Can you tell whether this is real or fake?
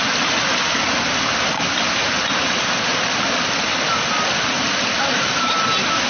real